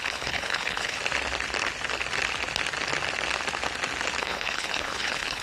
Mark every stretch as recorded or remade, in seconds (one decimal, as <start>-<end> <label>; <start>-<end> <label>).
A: 0.0-1.0 remade; 1.0-4.2 recorded; 4.2-5.4 remade